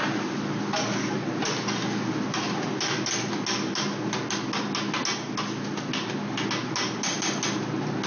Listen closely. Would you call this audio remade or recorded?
recorded